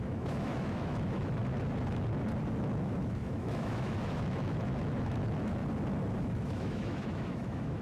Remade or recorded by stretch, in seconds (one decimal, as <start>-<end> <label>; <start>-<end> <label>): 0.0-1.4 remade; 1.4-2.6 recorded; 2.6-5.6 remade; 5.6-6.2 recorded; 6.2-7.8 remade